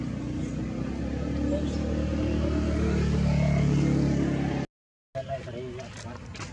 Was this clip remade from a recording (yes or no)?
no